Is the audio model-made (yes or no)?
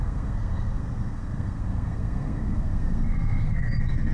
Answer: yes